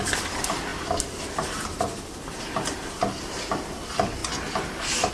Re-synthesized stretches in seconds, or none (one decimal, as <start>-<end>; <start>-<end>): none